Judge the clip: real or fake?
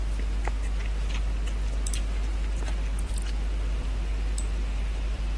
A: real